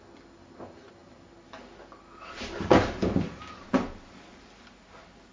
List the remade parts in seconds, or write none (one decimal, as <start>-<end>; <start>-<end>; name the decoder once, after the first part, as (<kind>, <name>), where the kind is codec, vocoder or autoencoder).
none

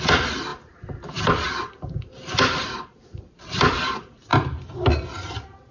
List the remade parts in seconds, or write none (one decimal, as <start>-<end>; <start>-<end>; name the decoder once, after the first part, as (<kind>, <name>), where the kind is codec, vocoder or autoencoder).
0.5-3.9 (vocoder, BigVGAN v2)

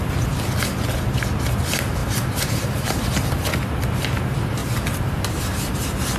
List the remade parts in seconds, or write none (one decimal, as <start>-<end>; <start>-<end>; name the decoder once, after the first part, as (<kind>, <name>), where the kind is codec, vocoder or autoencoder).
2.0-3.1 (vocoder, BigVGAN v2); 4.6-5.7

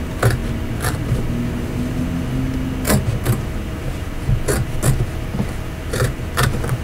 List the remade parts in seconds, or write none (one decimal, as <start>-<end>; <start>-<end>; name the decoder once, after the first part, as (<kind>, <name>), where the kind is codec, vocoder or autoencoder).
none